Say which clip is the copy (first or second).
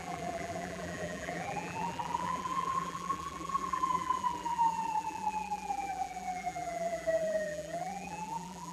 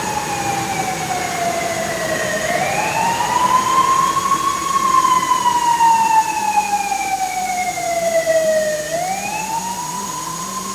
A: first